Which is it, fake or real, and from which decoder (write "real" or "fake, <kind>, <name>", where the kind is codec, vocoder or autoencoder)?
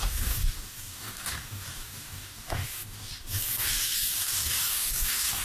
fake, codec, DAC